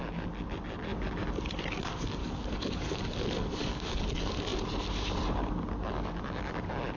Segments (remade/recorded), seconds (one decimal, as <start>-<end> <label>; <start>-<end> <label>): 0.0-2.2 recorded; 2.2-4.0 remade; 4.0-7.0 recorded